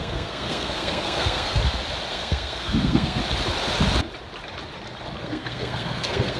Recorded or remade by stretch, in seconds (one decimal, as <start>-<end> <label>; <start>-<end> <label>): 0.0-1.6 remade; 1.6-2.1 recorded; 2.1-3.2 remade; 3.2-5.2 recorded; 5.2-6.4 remade